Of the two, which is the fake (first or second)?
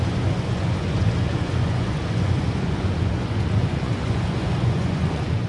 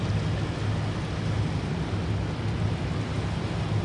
first